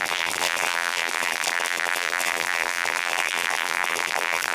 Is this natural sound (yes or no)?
no